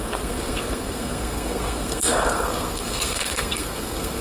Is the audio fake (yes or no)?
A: yes